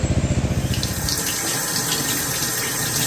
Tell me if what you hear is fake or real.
real